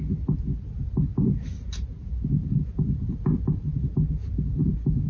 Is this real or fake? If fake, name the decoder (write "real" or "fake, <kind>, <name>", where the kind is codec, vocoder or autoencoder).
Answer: real